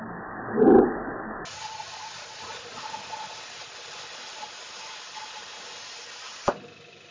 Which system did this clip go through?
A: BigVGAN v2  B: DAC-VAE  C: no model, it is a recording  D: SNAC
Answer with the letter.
C